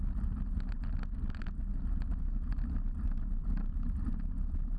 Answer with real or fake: real